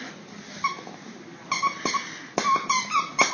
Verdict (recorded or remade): recorded